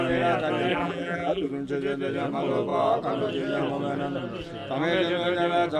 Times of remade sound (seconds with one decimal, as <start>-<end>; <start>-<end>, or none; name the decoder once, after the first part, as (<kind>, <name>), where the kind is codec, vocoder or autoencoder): 0.7-1.5 (vocoder, BigVGAN v2)